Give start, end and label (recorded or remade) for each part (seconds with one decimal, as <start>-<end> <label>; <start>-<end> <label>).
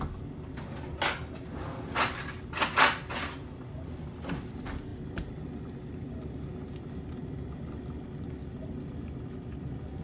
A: 0.0-10.0 recorded